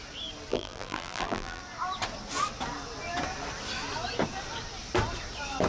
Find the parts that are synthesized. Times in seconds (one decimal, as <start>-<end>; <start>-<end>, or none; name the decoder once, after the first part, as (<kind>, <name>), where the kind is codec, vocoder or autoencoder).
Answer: 0.5-1.6 (vocoder, BigVGAN v2)